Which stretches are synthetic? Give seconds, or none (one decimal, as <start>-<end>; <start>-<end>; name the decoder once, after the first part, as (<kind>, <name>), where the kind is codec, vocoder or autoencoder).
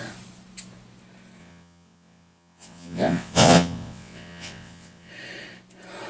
1.4-5.1 (vocoder, WaveNeXt)